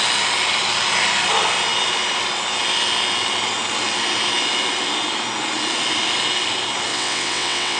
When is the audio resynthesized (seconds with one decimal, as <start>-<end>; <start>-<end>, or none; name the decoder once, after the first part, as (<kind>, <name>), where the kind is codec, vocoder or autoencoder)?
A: 6.9-7.8 (vocoder, WaveNeXt)